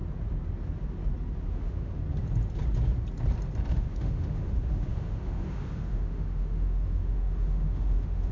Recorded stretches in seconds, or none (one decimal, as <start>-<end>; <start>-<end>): 0.0-1.5; 2.0-3.7